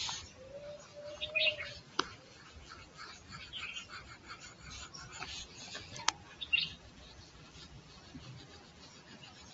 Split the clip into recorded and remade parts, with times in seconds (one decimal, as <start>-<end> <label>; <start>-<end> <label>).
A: 0.0-0.9 recorded; 0.9-3.5 remade; 3.5-5.1 recorded; 5.1-9.5 remade